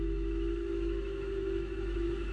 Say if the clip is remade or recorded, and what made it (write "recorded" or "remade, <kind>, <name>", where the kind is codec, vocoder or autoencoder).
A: remade, autoencoder, DAC-VAE